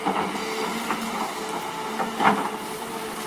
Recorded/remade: recorded